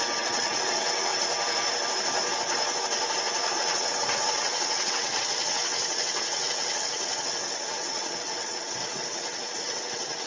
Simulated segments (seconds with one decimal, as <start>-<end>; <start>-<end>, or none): 0.0-1.1; 3.6-10.3